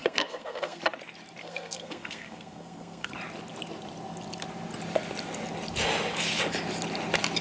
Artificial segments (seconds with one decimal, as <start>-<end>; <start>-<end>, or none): 0.0-0.8; 1.4-3.1